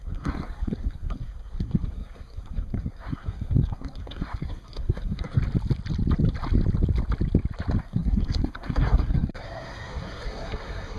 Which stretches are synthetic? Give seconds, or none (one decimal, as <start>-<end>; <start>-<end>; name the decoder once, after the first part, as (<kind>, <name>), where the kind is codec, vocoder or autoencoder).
0.0-5.4 (codec, SNAC); 7.8-11.0